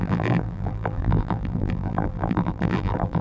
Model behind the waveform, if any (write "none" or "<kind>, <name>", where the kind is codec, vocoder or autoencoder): vocoder, BigVGAN v2